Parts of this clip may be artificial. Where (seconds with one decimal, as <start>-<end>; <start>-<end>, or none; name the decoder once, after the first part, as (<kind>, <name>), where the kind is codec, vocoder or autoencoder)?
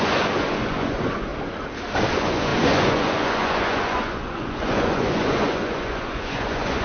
0.0-1.3 (vocoder, Vocos); 2.1-6.8